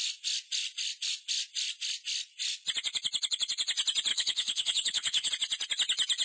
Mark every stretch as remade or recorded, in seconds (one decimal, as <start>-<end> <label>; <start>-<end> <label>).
0.0-4.1 recorded; 4.1-5.3 remade; 5.3-6.2 recorded